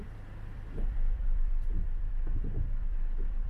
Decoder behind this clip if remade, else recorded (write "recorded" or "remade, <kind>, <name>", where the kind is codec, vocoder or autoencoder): remade, vocoder, BigVGAN v2